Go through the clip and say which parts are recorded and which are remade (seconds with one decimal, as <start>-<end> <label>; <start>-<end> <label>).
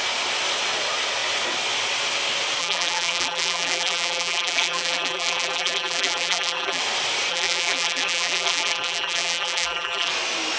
0.0-2.6 recorded; 2.6-6.8 remade; 6.8-7.3 recorded; 7.3-10.1 remade; 10.1-10.6 recorded